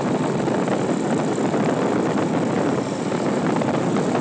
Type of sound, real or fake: real